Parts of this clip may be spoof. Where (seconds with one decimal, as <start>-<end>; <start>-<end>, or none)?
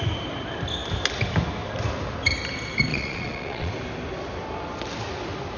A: 2.9-3.7